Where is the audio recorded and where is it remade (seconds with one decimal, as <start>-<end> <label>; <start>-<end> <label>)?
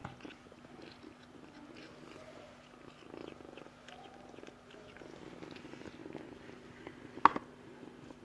0.0-8.2 recorded